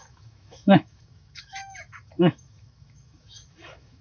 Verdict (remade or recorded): remade